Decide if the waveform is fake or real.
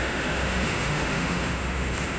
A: fake